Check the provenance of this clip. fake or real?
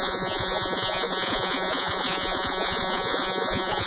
fake